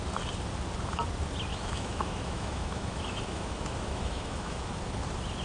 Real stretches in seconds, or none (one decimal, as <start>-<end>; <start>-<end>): 0.0-1.5; 4.7-5.4